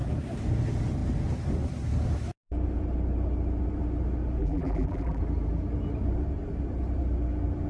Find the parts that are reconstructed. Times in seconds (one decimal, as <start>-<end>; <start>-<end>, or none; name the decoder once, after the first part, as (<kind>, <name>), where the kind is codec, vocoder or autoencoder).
4.4-5.2 (vocoder, BigVGAN v2)